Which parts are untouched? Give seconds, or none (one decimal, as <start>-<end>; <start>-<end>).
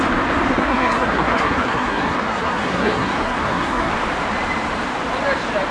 0.0-0.5; 3.9-5.7